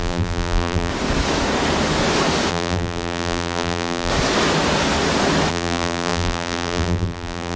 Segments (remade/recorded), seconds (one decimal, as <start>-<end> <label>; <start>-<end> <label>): 0.0-0.9 remade; 0.9-2.5 recorded; 2.5-4.1 remade; 4.1-5.5 recorded; 5.5-7.6 remade

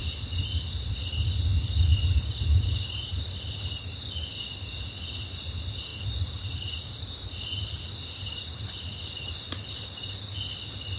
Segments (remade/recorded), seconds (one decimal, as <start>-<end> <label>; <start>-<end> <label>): 0.0-1.9 recorded; 1.9-3.1 remade; 3.1-5.9 recorded; 5.9-7.4 remade; 7.4-11.0 recorded

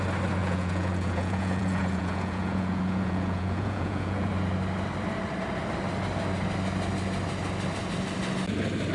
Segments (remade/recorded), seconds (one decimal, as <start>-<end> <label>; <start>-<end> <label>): 0.0-0.4 recorded; 0.4-4.3 remade; 4.3-8.9 recorded

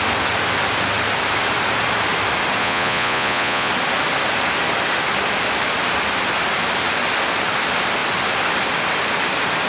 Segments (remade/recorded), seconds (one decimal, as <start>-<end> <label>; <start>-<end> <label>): 0.0-2.6 recorded; 2.6-3.7 remade; 3.7-9.7 recorded